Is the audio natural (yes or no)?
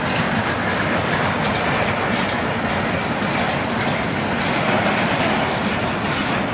yes